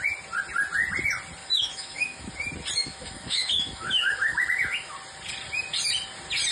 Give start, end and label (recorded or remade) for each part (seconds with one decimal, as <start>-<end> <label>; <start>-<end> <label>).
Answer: 0.0-1.4 recorded; 1.4-2.3 remade; 2.3-2.8 recorded; 2.8-4.9 remade; 4.9-6.5 recorded